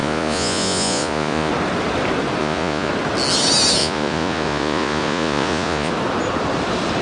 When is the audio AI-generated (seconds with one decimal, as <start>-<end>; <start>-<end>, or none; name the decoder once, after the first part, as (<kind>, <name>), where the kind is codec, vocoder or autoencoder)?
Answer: 0.0-1.5 (vocoder, Vocos); 2.4-2.9; 3.8-5.9